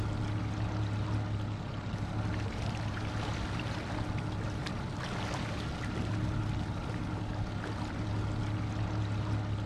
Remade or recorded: recorded